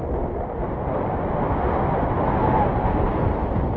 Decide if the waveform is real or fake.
real